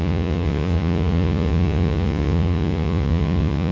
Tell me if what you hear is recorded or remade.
remade